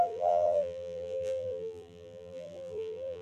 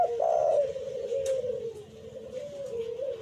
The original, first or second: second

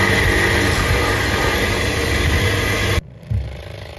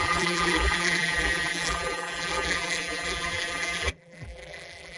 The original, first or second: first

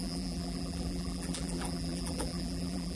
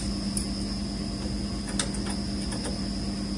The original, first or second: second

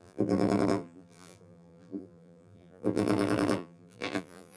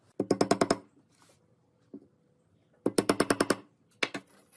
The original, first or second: second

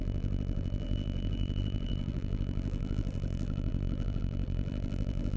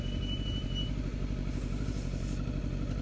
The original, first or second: second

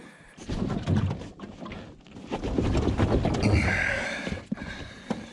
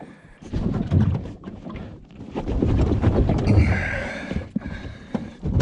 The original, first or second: first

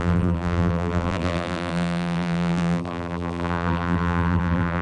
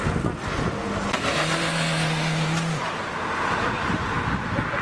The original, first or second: second